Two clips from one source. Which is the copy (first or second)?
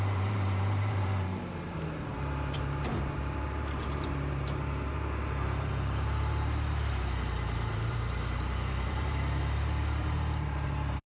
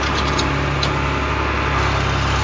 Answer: first